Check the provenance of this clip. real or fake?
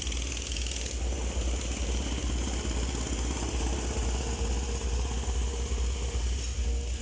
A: real